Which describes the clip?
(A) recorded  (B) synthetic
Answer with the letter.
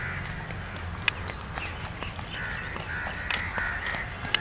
A